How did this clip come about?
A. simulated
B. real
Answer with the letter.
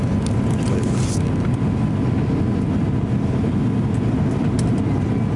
B